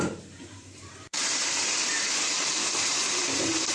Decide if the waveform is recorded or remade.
remade